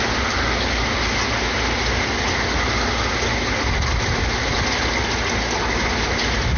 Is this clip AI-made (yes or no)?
no